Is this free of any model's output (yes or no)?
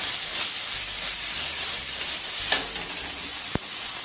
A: yes